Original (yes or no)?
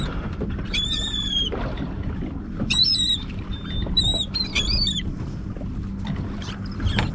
no